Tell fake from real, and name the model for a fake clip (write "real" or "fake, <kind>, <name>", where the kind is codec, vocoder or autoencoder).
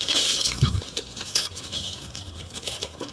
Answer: fake, codec, SNAC